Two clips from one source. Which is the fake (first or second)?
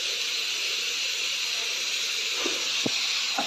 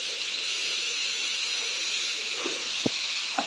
second